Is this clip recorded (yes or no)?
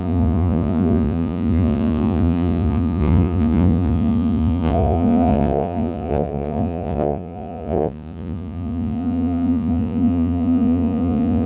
no